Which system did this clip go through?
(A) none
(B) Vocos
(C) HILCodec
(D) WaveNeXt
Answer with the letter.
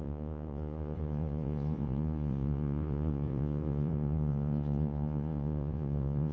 B